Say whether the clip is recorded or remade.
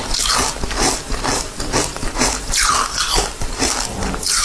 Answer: recorded